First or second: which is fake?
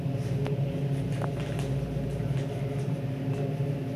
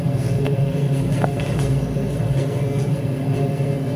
second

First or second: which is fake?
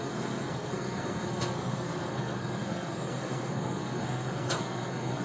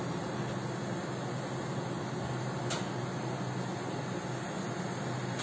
first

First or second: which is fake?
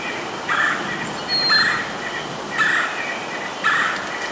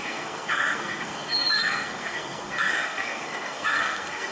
second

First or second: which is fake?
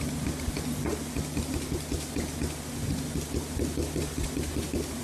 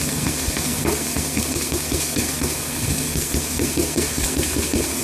second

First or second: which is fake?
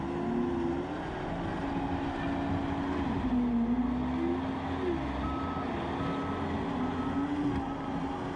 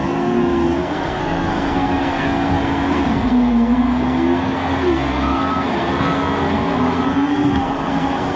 second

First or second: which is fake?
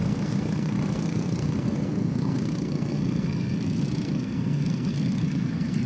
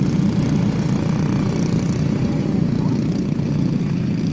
first